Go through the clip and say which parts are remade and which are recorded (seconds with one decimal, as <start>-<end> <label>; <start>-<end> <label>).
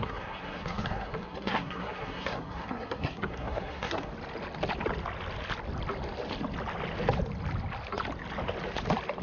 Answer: 0.0-4.1 remade; 4.1-9.2 recorded